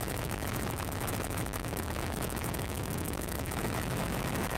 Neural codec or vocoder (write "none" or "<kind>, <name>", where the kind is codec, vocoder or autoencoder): autoencoder, DAC-VAE